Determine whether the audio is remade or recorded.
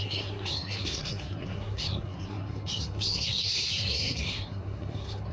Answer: remade